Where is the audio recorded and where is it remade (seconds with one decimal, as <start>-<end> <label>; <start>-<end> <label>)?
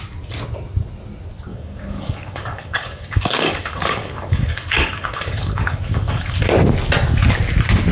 0.0-1.5 recorded; 1.5-6.2 remade; 6.2-7.9 recorded